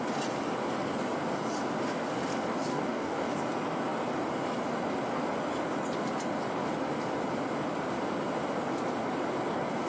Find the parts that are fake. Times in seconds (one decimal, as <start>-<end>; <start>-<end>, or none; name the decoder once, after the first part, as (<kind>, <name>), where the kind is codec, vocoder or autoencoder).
2.7-3.4 (codec, DAC)